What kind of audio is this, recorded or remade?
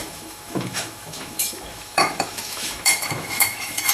remade